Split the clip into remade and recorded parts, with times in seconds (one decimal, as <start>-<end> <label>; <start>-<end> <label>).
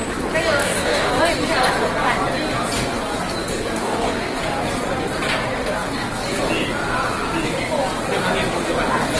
0.0-0.6 recorded; 0.6-1.1 remade; 1.1-3.8 recorded; 3.8-4.4 remade; 4.4-9.2 recorded